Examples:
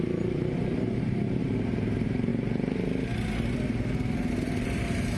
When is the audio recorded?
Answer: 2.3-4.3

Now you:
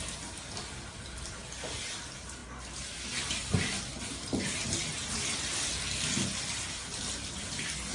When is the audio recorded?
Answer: 0.0-7.9